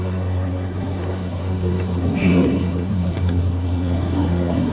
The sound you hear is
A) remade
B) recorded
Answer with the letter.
A